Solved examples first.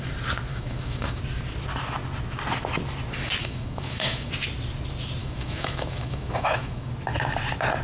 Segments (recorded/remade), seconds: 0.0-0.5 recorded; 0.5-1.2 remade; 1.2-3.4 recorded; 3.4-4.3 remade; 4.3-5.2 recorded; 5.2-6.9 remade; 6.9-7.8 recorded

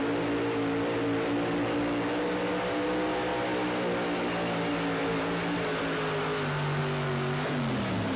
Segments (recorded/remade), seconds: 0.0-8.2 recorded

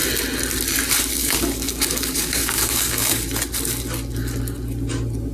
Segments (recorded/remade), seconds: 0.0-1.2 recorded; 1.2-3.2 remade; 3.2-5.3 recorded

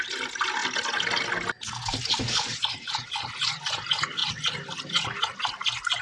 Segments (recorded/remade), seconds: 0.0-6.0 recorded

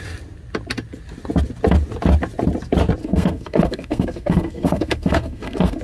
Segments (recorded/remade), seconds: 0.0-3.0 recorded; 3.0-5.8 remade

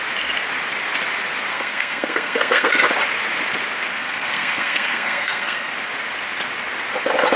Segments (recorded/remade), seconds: 0.0-1.5 recorded; 1.5-2.7 remade; 2.7-3.9 recorded; 3.9-5.7 remade; 5.7-7.4 recorded